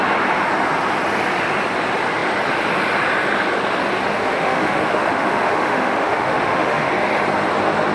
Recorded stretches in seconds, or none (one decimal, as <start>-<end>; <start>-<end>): 0.0-4.2; 6.9-7.9

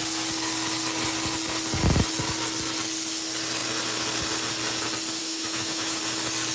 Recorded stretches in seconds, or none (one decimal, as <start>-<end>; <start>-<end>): 0.0-5.2; 6.0-6.5

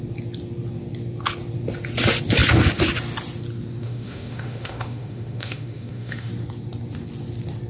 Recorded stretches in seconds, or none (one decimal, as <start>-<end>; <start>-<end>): 0.0-3.8; 6.3-7.7

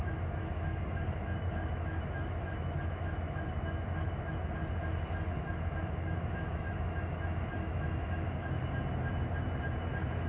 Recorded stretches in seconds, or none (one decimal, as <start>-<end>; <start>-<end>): 4.3-5.4; 8.6-10.3

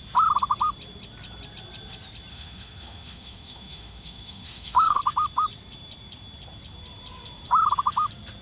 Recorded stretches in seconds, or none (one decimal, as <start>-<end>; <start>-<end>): 0.0-2.3; 5.0-8.4